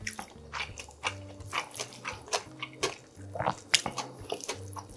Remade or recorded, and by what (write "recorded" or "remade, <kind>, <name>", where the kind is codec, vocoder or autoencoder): recorded